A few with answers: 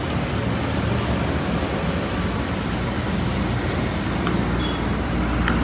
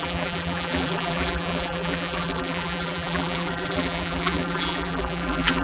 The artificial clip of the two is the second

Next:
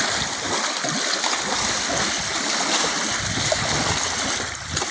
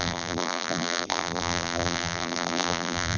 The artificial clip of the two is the second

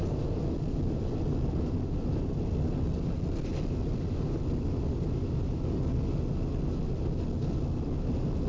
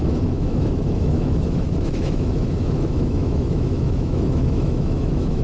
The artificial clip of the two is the second